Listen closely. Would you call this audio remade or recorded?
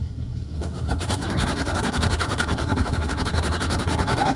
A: remade